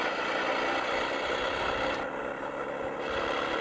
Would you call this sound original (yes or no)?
yes